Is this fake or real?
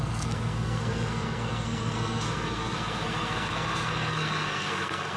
fake